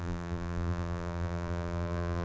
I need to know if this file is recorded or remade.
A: remade